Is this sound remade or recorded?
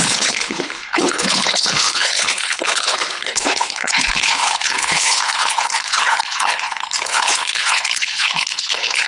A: remade